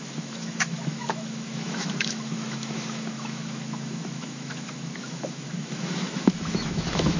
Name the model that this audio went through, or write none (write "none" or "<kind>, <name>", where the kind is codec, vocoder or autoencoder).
autoencoder, DAC-VAE